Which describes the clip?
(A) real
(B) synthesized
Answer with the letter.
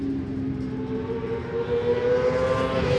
A